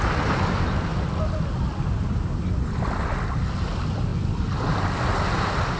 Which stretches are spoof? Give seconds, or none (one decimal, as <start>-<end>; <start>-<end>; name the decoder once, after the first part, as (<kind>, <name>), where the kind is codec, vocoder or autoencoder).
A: none